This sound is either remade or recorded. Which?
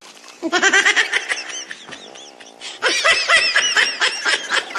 recorded